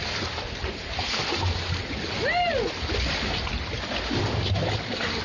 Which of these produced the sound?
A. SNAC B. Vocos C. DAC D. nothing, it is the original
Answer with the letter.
D